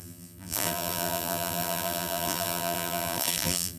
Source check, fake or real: fake